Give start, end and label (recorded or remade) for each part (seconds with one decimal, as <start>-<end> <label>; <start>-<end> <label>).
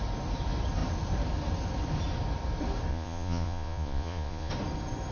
0.0-2.9 recorded; 2.9-4.5 remade; 4.5-5.1 recorded